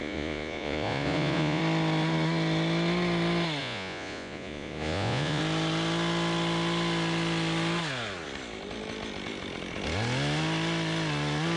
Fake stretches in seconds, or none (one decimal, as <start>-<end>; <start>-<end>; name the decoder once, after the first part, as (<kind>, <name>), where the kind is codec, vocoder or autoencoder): 0.0-1.6 (vocoder, Vocos); 3.6-5.4